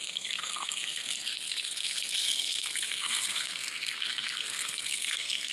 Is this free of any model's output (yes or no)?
no